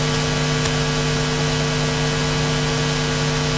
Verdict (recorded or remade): recorded